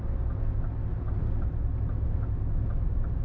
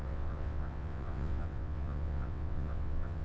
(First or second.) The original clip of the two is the first